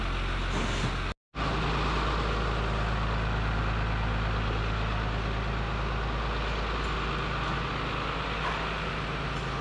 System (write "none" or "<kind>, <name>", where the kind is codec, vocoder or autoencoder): none